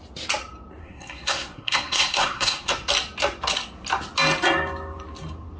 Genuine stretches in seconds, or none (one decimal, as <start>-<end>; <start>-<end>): 0.0-0.8; 2.7-5.6